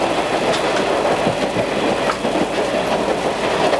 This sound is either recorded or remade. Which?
recorded